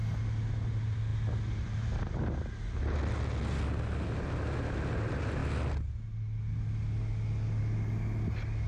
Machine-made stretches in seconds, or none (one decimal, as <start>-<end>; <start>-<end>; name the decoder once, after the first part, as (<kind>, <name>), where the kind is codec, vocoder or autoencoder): none